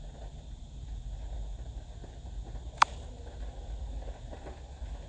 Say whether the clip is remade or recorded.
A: recorded